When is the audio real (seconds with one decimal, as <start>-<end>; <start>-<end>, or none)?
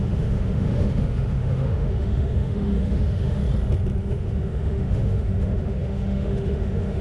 3.4-4.0